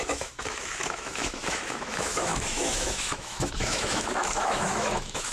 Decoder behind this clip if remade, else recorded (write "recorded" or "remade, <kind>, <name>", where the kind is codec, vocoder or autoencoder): remade, autoencoder, DAC-VAE